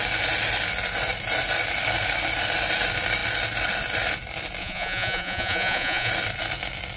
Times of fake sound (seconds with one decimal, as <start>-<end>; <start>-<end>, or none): 4.6-6.1